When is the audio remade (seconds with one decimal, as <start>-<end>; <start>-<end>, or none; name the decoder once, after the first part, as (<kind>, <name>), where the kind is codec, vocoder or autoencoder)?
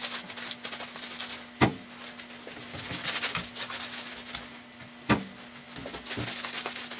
none